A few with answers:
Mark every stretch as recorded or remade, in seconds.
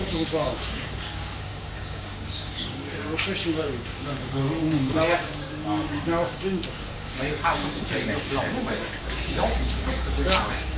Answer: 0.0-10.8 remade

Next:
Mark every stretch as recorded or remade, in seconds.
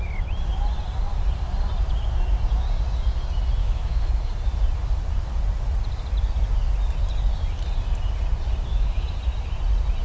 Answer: 0.0-3.6 recorded; 3.6-4.1 remade; 4.1-8.7 recorded; 8.7-9.2 remade; 9.2-10.0 recorded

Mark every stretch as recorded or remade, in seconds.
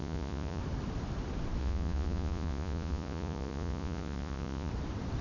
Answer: 0.0-0.6 remade; 0.6-1.6 recorded; 1.6-4.7 remade; 4.7-5.2 recorded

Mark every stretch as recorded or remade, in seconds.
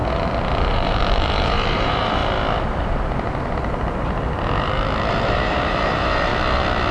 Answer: 0.0-0.7 recorded; 0.7-2.2 remade; 2.2-5.1 recorded; 5.1-6.3 remade; 6.3-6.9 recorded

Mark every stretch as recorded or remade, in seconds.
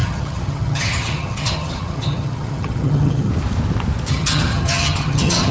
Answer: 0.0-3.3 remade; 3.3-4.1 recorded; 4.1-5.5 remade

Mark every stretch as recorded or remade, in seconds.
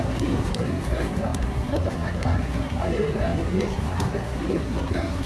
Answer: 0.0-5.3 remade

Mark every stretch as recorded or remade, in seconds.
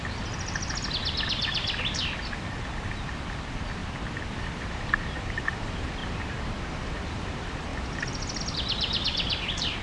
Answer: 0.0-9.8 recorded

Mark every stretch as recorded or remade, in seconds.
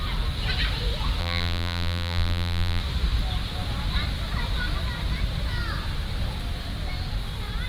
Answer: 0.0-1.2 recorded; 1.2-2.8 remade; 2.8-7.7 recorded